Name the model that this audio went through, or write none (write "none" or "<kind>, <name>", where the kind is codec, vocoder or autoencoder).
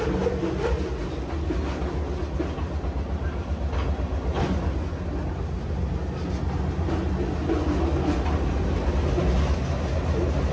none